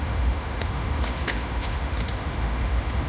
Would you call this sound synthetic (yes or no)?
yes